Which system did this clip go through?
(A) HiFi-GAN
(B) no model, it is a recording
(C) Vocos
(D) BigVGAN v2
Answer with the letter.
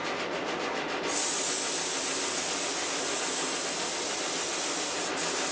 B